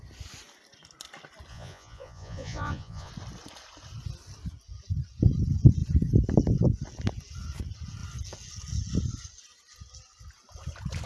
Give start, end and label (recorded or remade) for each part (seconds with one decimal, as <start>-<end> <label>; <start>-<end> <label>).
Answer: 0.0-1.5 recorded; 1.5-3.1 remade; 3.1-11.1 recorded